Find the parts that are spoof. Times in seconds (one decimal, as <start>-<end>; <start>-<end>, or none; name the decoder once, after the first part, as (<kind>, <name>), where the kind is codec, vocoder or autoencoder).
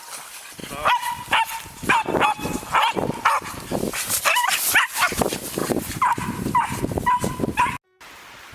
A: 5.6-6.8 (vocoder, BigVGAN v2)